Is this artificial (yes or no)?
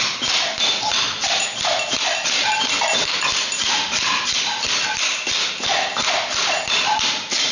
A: no